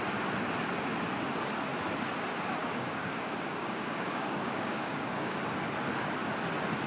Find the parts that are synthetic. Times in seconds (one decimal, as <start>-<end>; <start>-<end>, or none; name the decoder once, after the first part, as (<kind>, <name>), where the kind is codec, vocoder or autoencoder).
2.6-5.4 (codec, DAC)